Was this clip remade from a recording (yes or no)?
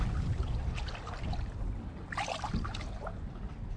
no